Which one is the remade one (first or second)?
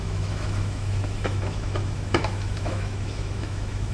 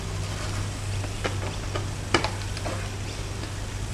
first